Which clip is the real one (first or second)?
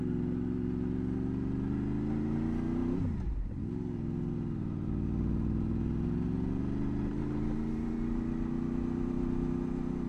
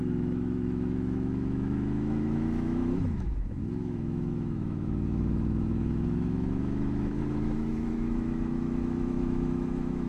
first